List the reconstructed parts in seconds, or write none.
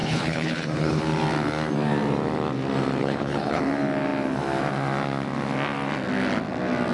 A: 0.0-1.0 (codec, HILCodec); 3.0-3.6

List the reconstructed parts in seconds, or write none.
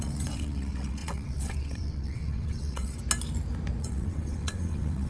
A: 0.0-3.0 (vocoder, WaveNeXt); 3.8-5.1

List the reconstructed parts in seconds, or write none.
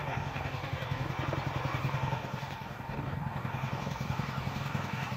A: 0.0-1.1 (codec, DAC); 1.8-5.2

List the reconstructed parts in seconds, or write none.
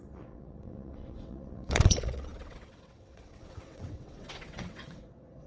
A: 0.0-5.5 (vocoder, WaveNeXt)